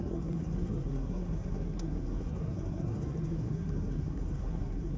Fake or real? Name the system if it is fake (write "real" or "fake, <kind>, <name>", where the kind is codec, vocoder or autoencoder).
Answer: fake, codec, SNAC